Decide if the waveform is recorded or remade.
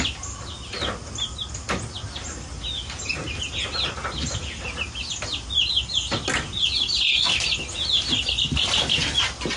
recorded